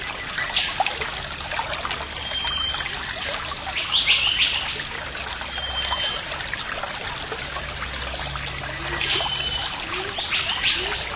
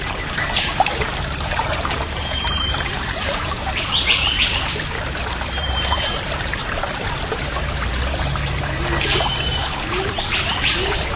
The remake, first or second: second